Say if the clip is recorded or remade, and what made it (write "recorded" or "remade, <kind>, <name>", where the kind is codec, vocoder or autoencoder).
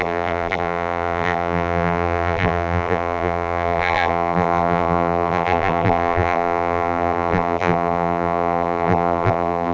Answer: remade, vocoder, BigVGAN v2